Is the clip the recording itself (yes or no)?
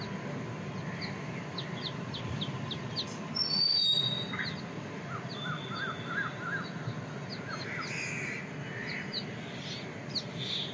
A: yes